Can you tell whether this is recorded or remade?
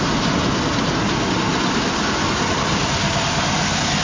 recorded